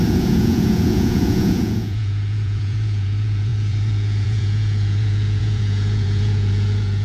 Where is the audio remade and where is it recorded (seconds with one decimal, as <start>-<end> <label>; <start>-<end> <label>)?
0.0-7.0 remade